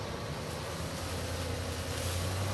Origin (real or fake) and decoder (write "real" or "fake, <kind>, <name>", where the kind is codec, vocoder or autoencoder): real